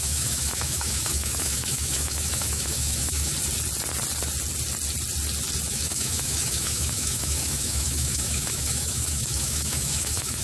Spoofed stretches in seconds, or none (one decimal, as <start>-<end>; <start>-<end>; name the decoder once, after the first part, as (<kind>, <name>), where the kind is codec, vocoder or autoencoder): 0.0-3.3 (autoencoder, DAC-VAE); 5.7-10.4